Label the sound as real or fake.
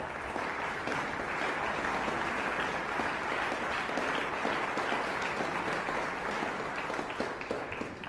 real